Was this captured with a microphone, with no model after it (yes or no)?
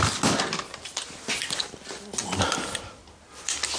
yes